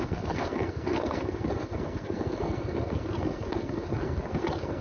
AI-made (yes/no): yes